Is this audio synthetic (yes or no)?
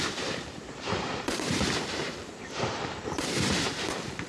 yes